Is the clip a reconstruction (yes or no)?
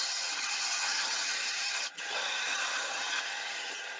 yes